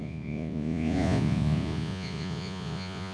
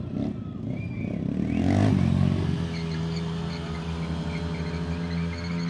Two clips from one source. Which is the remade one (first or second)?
first